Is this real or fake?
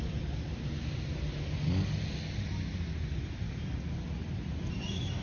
real